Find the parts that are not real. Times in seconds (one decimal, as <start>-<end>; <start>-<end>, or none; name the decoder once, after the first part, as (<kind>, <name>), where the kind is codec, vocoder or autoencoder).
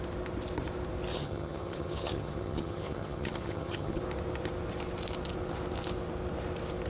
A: 1.1-4.0 (vocoder, HiFi-GAN)